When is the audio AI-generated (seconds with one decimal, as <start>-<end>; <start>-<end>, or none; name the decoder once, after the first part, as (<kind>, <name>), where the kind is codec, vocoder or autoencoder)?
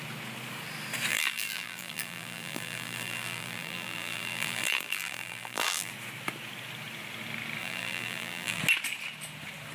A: 1.1-5.9 (vocoder, BigVGAN v2); 7.6-8.6